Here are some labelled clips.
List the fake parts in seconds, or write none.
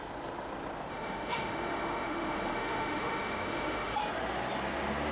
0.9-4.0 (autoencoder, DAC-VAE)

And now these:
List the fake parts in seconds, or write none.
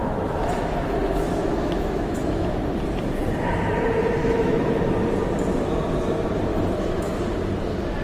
0.0-2.7 (autoencoder, DAC-VAE); 4.2-4.8; 6.5-7.2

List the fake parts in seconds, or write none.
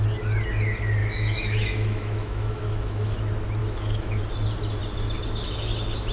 1.0-3.2 (autoencoder, DAC-VAE); 3.6-4.2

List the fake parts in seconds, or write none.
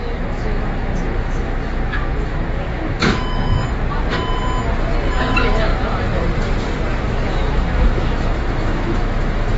0.0-3.6 (autoencoder, DAC-VAE); 5.2-5.7; 7.0-9.6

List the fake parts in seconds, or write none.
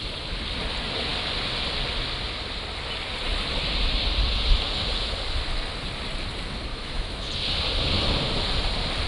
6.7-7.3 (autoencoder, DAC-VAE)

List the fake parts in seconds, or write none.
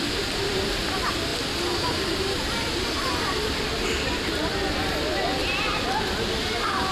none